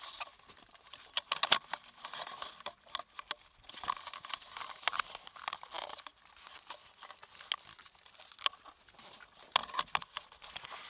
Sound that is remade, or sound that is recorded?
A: recorded